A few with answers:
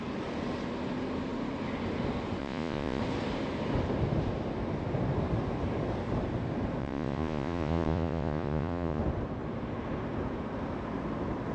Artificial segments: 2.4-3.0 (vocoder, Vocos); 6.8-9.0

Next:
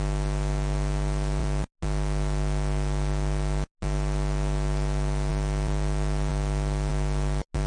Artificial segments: none